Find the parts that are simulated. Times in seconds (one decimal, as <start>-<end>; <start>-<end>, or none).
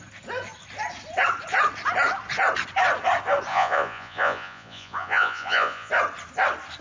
3.5-5.9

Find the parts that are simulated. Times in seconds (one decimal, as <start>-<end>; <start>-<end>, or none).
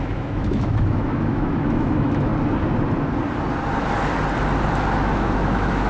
0.0-2.3; 5.0-5.9